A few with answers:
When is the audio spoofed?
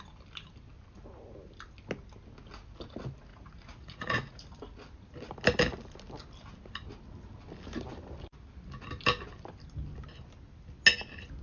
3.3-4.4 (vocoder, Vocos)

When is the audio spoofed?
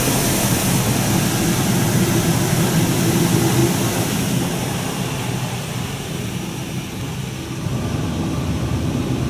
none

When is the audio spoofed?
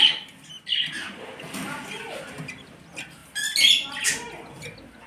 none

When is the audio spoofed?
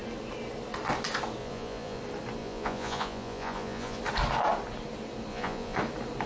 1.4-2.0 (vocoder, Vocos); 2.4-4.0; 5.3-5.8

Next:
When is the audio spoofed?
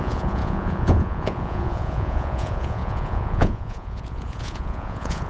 0.0-5.3 (vocoder, Vocos)